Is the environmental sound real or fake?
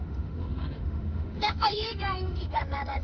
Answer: fake